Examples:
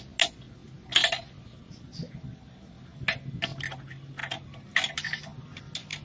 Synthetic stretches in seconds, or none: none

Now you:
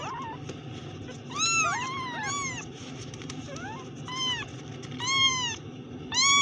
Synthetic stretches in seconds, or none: none

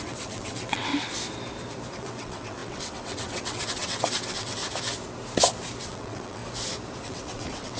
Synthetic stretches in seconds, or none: 0.0-0.9 (vocoder, WaveNeXt); 1.9-4.6; 5.8-6.4; 7.0-7.8

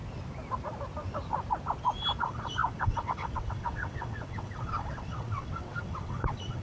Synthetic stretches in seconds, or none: 2.2-6.6 (vocoder, WaveNeXt)

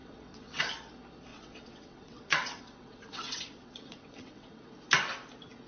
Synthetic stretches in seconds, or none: 0.0-0.6 (vocoder, WaveNeXt); 1.3-4.7

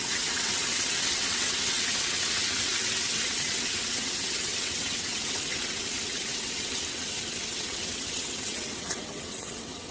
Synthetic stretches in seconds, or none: 0.0-9.9 (vocoder, WaveNeXt)

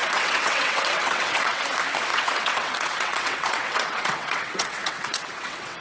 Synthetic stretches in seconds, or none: 0.0-1.6 (vocoder, WaveNeXt); 2.1-5.8

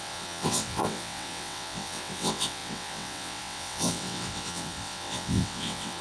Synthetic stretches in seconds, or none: 0.0-6.0 (vocoder, WaveNeXt)